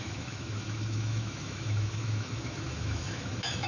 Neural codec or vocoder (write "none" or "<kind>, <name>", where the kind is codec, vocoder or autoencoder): autoencoder, DAC-VAE